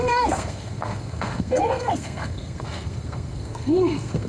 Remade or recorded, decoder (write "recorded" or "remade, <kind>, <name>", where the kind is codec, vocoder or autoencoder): remade, codec, SNAC